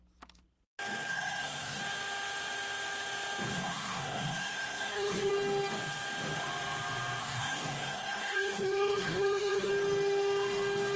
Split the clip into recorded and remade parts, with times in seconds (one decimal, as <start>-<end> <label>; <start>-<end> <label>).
0.0-1.1 recorded; 1.1-1.8 remade; 1.8-3.5 recorded; 3.5-5.3 remade; 5.3-7.2 recorded; 7.2-9.7 remade; 9.7-11.0 recorded